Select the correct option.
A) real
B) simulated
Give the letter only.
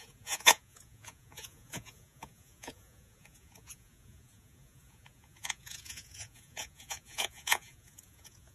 B